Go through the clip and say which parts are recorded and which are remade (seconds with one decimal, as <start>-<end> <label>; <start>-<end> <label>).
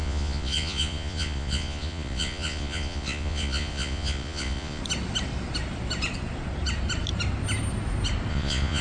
0.0-4.8 remade; 4.8-8.3 recorded; 8.3-8.8 remade